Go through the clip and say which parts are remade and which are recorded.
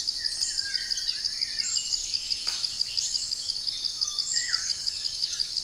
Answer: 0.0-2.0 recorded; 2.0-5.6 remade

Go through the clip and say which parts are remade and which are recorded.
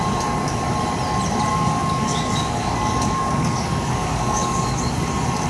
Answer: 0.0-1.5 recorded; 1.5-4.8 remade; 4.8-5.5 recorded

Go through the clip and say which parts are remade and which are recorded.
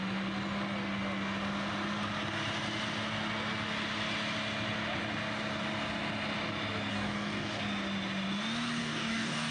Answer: 0.0-6.9 recorded; 6.9-7.6 remade; 7.6-8.8 recorded; 8.8-9.5 remade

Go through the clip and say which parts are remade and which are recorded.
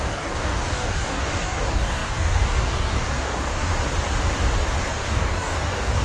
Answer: 0.0-3.7 remade; 3.7-4.9 recorded; 4.9-6.0 remade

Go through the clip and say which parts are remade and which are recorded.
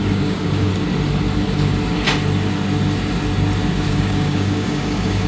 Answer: 0.0-0.7 remade; 0.7-3.9 recorded; 3.9-5.3 remade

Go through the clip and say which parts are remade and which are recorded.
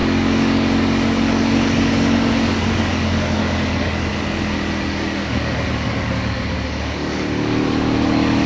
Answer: 0.0-4.1 remade; 4.1-4.8 recorded; 4.8-8.5 remade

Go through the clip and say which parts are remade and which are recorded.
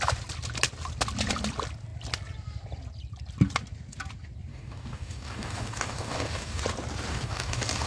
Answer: 0.0-4.5 recorded; 4.5-6.6 remade; 6.6-7.1 recorded; 7.1-7.9 remade